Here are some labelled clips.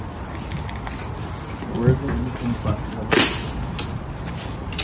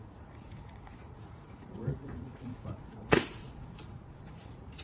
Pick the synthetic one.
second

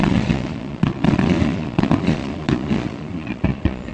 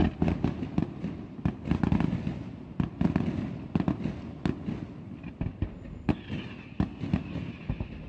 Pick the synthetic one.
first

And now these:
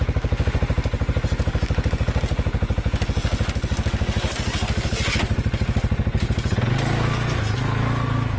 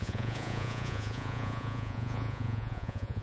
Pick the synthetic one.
second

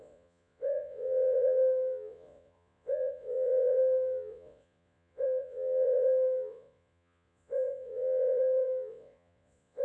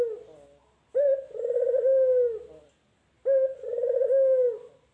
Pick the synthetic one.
first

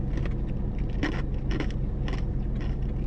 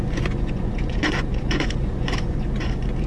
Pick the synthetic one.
second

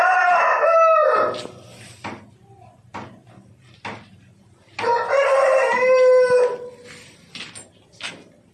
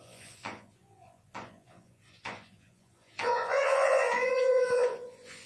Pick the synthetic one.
second